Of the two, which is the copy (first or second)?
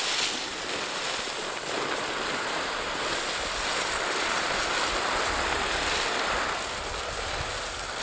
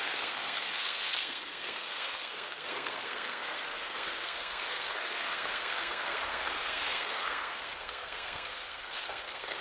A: second